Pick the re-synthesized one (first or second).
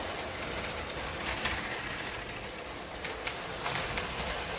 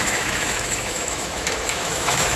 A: second